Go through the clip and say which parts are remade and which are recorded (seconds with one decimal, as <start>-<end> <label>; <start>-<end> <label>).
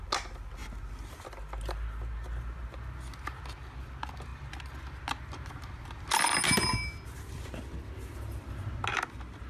0.0-9.5 recorded